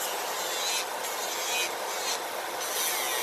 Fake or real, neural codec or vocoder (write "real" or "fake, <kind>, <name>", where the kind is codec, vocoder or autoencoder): real